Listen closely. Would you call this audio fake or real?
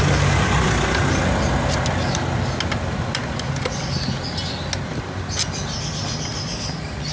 real